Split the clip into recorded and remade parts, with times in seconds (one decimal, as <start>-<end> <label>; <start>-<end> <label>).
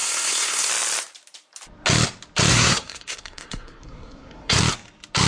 0.0-0.7 remade; 0.7-2.5 recorded; 2.5-4.6 remade; 4.6-5.3 recorded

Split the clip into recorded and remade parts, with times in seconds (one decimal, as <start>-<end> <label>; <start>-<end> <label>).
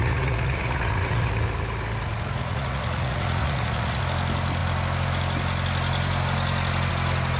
0.0-1.3 remade; 1.3-2.4 recorded; 2.4-4.0 remade; 4.0-7.4 recorded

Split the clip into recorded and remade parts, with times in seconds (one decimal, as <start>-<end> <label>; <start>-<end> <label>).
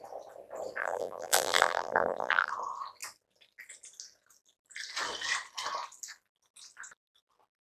0.0-0.8 recorded; 0.8-2.5 remade; 2.5-7.6 recorded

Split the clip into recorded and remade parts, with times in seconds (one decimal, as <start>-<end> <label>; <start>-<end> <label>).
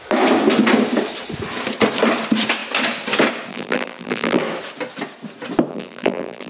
0.0-3.5 recorded; 3.5-4.4 remade; 4.4-5.7 recorded; 5.7-6.5 remade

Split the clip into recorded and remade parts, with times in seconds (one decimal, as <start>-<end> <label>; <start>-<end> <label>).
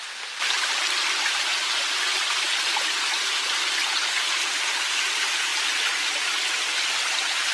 0.0-7.5 recorded